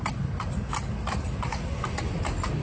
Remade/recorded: recorded